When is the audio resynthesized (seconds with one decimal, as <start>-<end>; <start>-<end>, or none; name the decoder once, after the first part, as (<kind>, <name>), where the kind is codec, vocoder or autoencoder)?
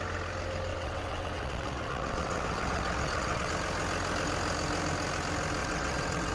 0.7-3.5 (vocoder, WaveNeXt); 5.6-6.3